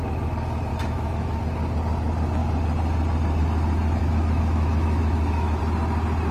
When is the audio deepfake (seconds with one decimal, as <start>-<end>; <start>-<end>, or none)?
0.7-1.4; 4.0-5.6